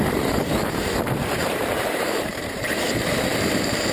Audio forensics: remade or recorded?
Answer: remade